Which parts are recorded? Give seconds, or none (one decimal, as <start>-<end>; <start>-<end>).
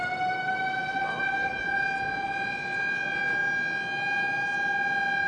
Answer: 0.0-5.3